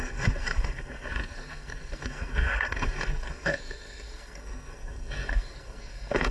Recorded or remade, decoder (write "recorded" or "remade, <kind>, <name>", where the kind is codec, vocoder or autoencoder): remade, codec, SNAC